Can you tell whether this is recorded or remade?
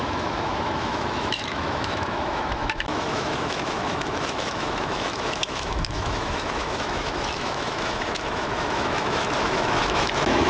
remade